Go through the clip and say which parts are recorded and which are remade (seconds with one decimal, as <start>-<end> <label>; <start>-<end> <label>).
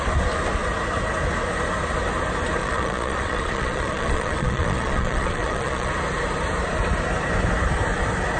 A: 0.0-2.6 recorded; 2.6-5.9 remade; 5.9-8.4 recorded